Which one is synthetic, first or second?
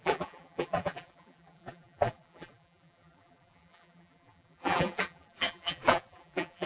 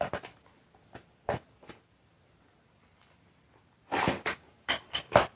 first